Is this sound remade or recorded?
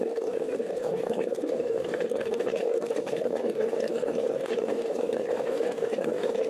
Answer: remade